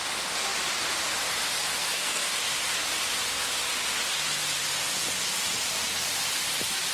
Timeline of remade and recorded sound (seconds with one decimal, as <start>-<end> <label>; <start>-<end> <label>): 0.0-1.7 recorded; 1.7-2.2 remade; 2.2-6.9 recorded